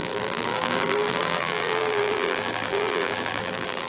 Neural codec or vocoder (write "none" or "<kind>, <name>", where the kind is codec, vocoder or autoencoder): vocoder, BigVGAN v2